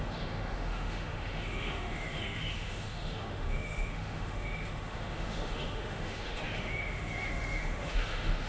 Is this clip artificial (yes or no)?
yes